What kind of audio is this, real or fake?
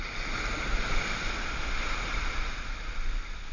real